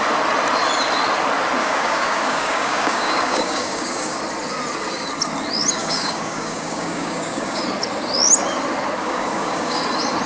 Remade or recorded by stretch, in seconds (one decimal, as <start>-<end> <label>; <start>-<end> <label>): 0.0-1.6 recorded; 1.6-4.2 remade; 4.2-5.8 recorded; 5.8-7.6 remade; 7.6-9.0 recorded; 9.0-9.8 remade; 9.8-10.3 recorded